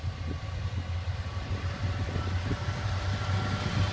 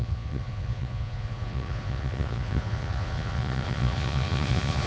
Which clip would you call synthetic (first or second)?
second